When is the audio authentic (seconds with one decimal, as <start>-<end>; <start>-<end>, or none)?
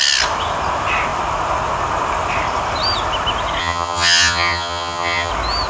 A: 0.0-3.6; 5.3-5.7